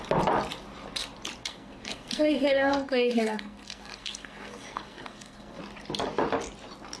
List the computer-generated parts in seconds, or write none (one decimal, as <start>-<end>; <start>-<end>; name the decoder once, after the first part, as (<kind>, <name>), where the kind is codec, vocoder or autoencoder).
1.4-5.6 (codec, SNAC)